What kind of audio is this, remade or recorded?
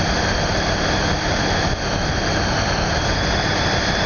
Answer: recorded